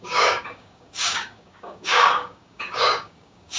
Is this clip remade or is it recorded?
remade